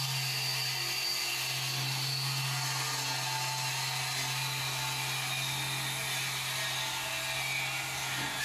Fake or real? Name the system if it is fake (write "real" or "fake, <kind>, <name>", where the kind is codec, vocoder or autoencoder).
real